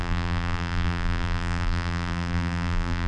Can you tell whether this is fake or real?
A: fake